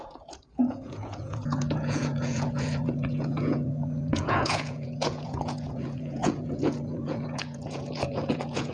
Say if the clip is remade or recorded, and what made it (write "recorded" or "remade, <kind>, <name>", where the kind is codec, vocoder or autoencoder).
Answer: remade, vocoder, Vocos